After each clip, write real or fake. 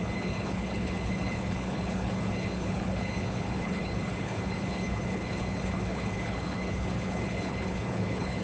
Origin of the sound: fake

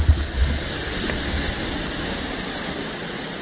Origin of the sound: real